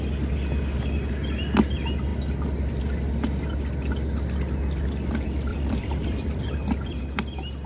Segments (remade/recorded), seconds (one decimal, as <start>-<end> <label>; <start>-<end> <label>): 0.0-5.5 recorded; 5.5-7.0 remade; 7.0-7.7 recorded